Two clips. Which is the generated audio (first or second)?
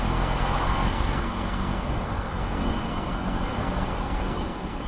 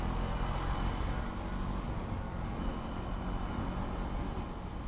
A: first